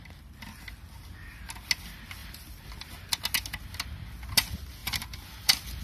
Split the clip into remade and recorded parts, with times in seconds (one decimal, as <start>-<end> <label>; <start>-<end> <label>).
0.0-2.2 recorded; 2.2-2.9 remade; 2.9-4.8 recorded; 4.8-5.8 remade